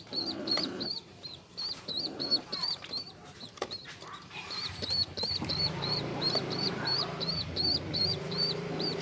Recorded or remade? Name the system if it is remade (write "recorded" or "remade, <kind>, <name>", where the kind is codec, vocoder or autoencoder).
remade, vocoder, BigVGAN v2